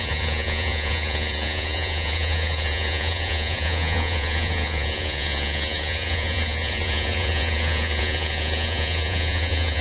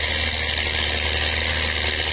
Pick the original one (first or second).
second